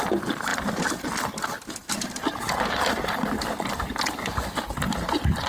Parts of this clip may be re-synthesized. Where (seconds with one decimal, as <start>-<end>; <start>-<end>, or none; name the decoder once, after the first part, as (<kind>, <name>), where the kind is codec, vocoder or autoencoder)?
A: none